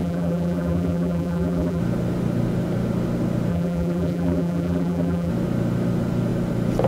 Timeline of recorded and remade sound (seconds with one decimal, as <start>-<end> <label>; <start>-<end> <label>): 0.0-1.8 remade; 1.8-3.5 recorded; 3.5-5.3 remade; 5.3-6.9 recorded